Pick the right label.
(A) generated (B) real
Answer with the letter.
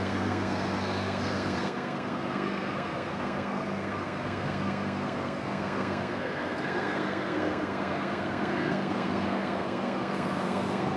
A